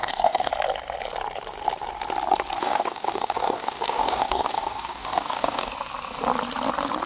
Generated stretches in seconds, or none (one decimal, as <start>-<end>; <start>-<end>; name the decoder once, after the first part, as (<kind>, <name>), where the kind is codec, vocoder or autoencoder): 0.0-0.5 (codec, DAC); 2.6-5.7